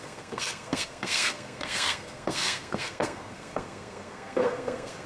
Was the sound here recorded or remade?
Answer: remade